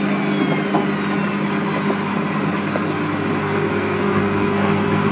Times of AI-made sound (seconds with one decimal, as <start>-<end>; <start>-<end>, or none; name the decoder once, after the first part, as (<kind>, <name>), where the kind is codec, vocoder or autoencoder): 3.4-5.1 (codec, SNAC)